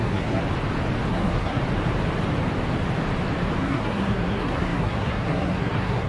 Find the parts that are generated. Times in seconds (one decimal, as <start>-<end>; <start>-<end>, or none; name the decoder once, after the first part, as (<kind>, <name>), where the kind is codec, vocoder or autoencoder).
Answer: 0.0-0.4 (codec, SNAC); 1.1-1.6; 3.6-6.1

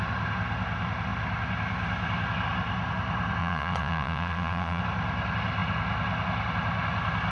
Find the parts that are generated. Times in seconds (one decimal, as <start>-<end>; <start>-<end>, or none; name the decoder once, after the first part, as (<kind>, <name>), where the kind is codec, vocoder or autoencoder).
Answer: 3.4-4.8 (vocoder, Vocos)

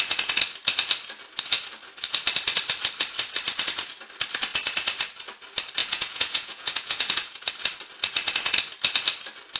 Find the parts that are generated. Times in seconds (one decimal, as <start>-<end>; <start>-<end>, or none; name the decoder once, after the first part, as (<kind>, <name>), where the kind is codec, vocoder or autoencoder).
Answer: 5.8-7.5 (vocoder, Vocos)